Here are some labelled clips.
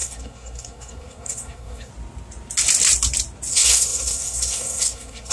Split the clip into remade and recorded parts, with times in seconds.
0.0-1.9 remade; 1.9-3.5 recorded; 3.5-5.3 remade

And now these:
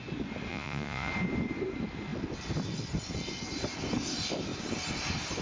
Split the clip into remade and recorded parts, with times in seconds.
0.0-0.5 recorded; 0.5-1.1 remade; 1.1-5.4 recorded

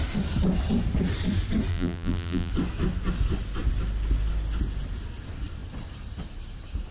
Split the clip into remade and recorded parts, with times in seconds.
0.0-1.7 recorded; 1.7-2.5 remade; 2.5-6.9 recorded